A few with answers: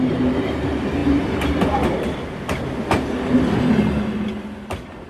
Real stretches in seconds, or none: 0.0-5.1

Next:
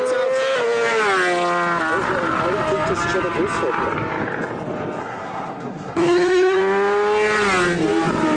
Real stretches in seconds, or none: 0.0-5.0; 6.6-8.4

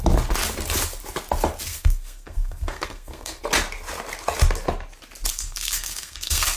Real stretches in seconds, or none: 0.0-1.7; 3.4-5.3